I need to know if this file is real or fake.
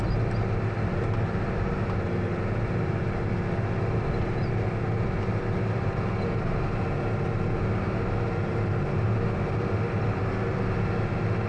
real